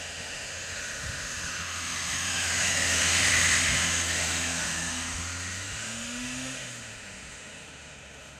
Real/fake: fake